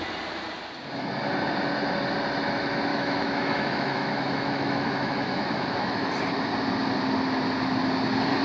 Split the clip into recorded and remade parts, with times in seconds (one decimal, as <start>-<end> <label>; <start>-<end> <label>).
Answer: 0.0-2.9 recorded; 2.9-6.1 remade; 6.1-8.4 recorded